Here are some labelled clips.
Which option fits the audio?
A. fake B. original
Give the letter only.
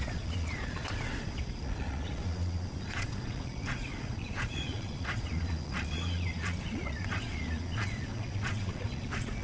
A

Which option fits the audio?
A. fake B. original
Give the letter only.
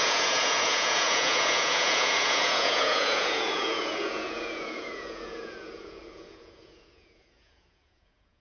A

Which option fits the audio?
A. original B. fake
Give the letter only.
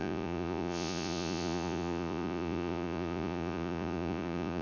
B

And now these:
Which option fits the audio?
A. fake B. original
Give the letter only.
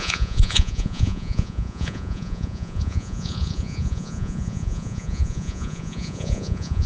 A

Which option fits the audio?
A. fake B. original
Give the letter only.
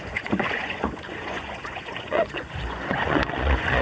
A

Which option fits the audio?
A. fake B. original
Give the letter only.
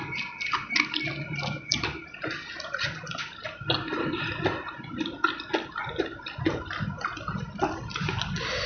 B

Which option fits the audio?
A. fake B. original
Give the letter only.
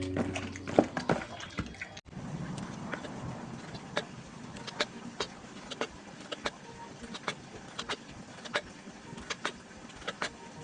B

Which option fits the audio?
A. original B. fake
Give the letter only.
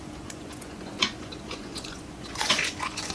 B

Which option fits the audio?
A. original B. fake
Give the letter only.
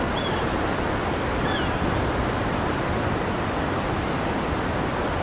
A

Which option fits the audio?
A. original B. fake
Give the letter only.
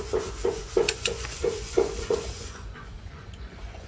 B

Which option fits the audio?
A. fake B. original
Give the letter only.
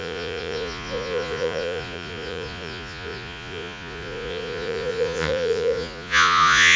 A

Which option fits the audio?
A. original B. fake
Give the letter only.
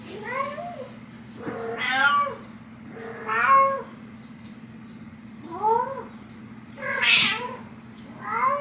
A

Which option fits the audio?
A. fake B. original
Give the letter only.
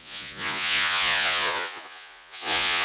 A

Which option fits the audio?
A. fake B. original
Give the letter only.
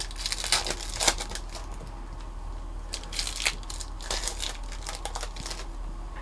B